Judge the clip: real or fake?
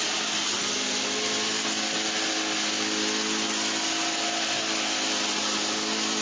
real